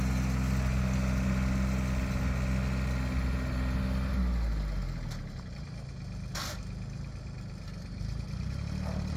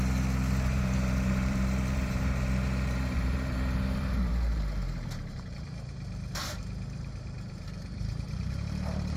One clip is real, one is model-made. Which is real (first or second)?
first